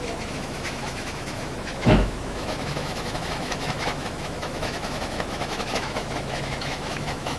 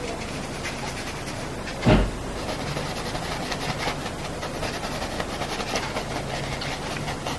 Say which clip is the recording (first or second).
second